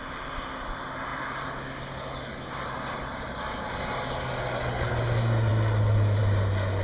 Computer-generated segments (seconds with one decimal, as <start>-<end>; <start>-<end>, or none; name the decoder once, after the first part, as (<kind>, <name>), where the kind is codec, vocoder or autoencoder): none